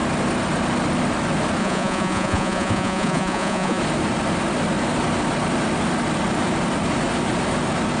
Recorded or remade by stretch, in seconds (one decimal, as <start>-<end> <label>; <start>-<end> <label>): 0.0-1.6 recorded; 1.6-3.8 remade; 3.8-8.0 recorded